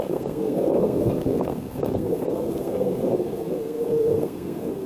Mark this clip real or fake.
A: fake